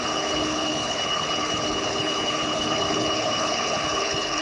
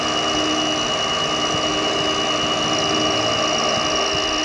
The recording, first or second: second